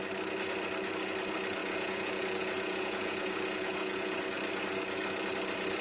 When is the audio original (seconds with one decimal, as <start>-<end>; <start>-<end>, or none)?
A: 0.0-1.6; 4.2-5.8